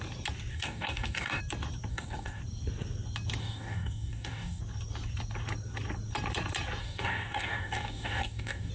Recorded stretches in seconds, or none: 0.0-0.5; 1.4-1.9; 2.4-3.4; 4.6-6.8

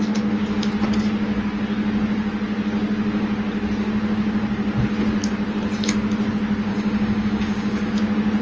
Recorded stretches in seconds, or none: 0.0-6.7; 7.9-8.4

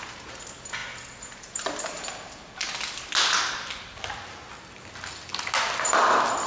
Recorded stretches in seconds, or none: 0.0-6.5

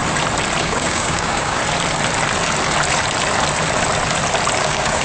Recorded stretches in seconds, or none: 0.0-0.6; 1.6-4.6

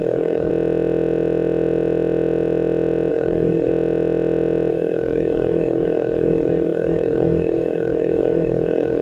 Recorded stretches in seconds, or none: 0.5-3.1; 3.7-4.7